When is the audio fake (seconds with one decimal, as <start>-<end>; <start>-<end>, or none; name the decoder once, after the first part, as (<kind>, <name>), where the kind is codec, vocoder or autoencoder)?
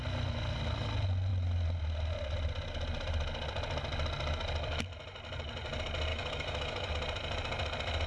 6.1-6.9 (autoencoder, DAC-VAE)